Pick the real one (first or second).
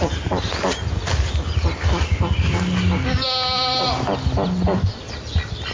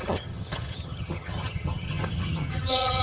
first